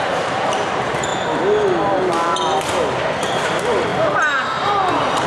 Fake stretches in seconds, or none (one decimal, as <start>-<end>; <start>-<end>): 0.0-1.1; 3.3-5.3

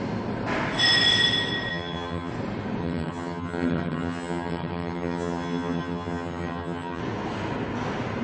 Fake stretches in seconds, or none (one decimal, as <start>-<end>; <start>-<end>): 1.7-2.3; 2.8-7.0

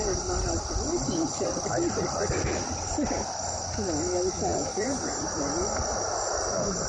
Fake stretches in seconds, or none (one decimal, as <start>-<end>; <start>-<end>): 4.5-6.9

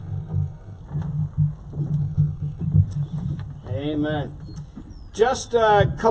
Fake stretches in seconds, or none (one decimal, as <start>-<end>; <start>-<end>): 0.0-0.8; 2.0-2.6

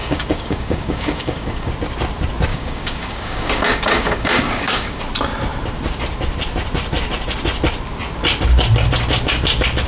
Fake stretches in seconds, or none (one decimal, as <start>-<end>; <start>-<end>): 0.0-1.7; 2.5-5.0